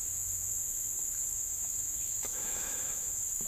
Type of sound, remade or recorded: remade